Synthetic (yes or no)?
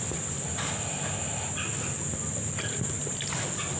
no